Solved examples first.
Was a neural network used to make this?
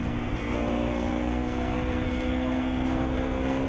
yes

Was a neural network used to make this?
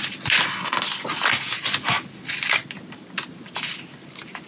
no